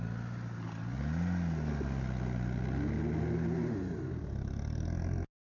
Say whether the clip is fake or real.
real